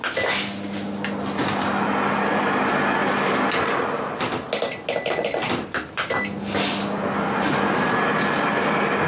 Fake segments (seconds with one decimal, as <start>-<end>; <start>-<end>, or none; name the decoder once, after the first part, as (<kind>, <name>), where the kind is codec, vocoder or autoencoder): none